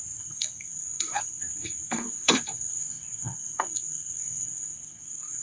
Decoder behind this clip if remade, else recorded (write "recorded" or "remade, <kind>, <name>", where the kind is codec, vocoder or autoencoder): remade, codec, SNAC